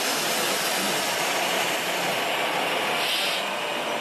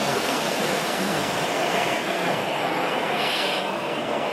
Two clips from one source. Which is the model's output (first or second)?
second